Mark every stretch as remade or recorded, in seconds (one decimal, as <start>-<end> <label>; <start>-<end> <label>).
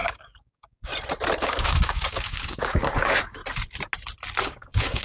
0.0-0.9 remade; 0.9-1.4 recorded; 1.4-3.4 remade; 3.4-4.4 recorded; 4.4-5.0 remade